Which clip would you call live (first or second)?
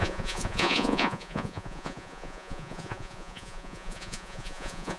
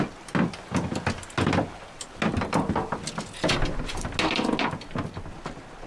second